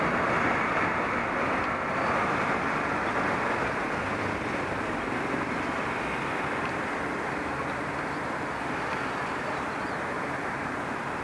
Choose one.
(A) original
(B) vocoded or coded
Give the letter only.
A